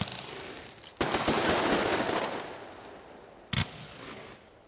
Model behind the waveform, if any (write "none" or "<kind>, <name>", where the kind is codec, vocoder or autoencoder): none